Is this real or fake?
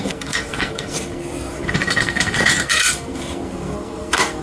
fake